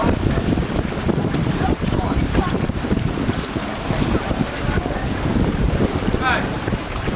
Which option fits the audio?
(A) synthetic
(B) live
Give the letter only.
A